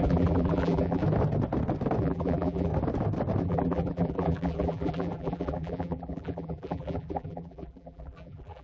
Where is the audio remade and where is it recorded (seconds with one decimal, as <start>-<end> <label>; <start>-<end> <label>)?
0.0-1.0 remade; 1.0-2.0 recorded; 2.0-2.7 remade; 2.7-3.4 recorded; 3.4-8.6 remade